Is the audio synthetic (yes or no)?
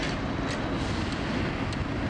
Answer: no